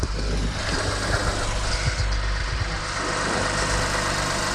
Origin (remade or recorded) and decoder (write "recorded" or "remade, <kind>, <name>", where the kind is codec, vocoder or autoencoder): recorded